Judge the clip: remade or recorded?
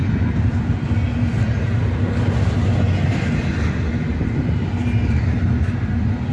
recorded